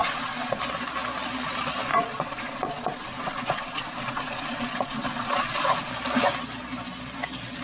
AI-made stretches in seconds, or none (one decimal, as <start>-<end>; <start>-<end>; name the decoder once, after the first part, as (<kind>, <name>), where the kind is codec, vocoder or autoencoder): 0.0-0.6 (vocoder, Vocos); 1.9-5.9